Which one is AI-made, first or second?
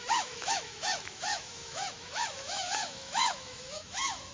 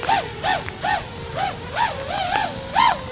first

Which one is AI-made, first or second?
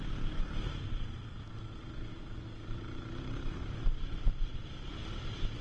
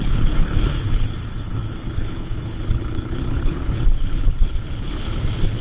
second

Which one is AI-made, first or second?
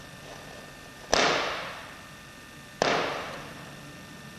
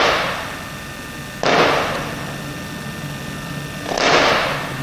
first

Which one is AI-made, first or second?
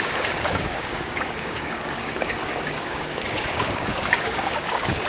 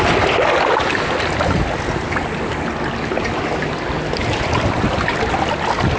first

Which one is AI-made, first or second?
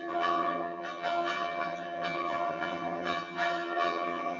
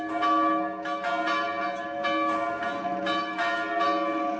first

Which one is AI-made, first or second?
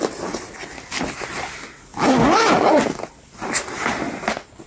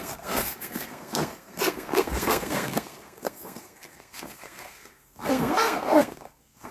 second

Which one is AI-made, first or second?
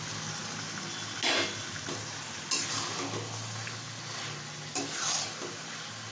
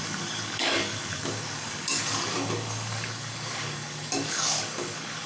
second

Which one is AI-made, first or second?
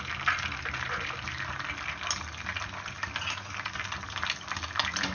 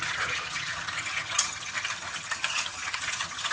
second